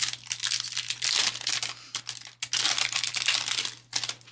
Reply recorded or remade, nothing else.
recorded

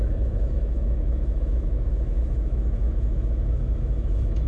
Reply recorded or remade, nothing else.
remade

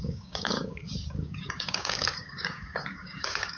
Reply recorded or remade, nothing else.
remade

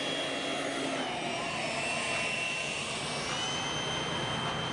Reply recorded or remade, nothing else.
recorded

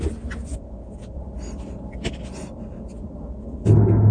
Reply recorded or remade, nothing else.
recorded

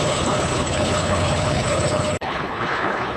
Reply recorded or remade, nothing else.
remade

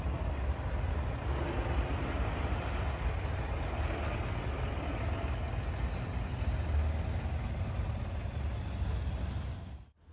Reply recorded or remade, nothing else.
recorded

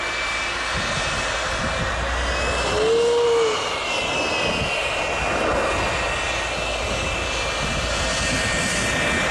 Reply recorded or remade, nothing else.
recorded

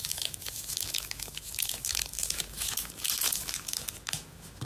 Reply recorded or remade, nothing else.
remade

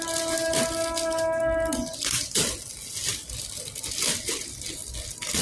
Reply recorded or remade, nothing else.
recorded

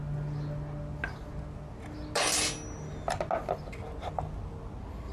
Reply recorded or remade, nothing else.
recorded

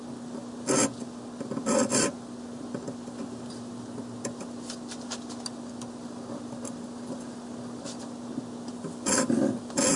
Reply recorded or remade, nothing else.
recorded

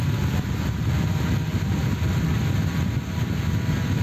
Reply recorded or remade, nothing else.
recorded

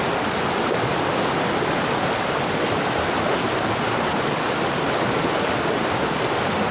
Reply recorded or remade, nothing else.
recorded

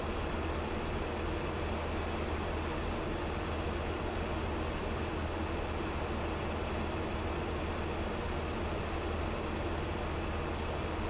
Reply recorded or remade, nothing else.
recorded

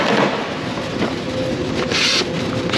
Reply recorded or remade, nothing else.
recorded